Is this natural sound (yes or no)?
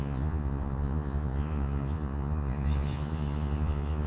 no